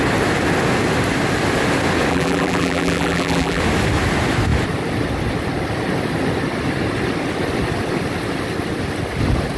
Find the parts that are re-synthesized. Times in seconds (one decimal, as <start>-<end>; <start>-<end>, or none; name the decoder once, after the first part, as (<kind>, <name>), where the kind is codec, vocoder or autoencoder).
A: 2.1-3.6 (vocoder, BigVGAN v2)